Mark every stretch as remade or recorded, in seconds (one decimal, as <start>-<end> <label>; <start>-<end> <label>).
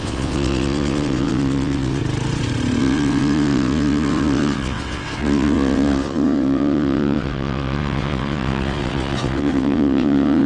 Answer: 0.0-2.0 remade; 2.0-2.8 recorded; 2.8-10.5 remade